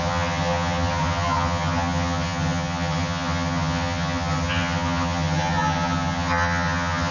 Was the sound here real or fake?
fake